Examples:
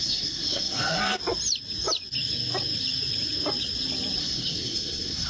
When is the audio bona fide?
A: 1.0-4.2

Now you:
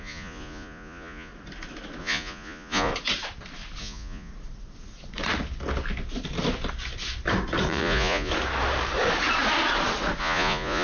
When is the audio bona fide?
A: 1.3-2.0; 2.9-3.8; 4.3-7.7; 8.3-10.2

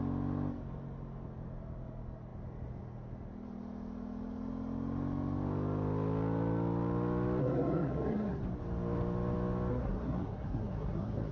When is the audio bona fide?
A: 0.0-7.4; 8.4-9.7

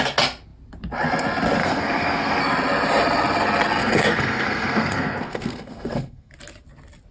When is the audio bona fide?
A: 0.0-1.6; 2.4-3.8; 6.3-7.1

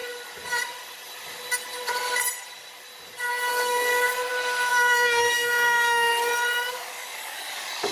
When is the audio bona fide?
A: 0.0-3.5; 4.2-4.7; 6.1-6.7